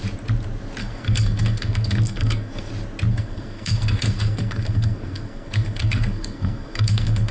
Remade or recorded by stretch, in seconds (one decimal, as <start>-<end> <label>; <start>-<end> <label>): 0.0-0.8 recorded; 0.8-2.7 remade; 2.7-3.1 recorded; 3.1-7.3 remade